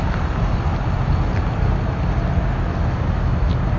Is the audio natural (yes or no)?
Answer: yes